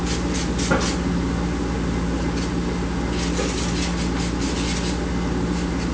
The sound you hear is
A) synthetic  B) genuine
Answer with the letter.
B